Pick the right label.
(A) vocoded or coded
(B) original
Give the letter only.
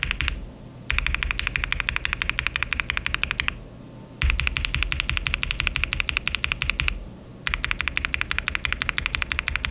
B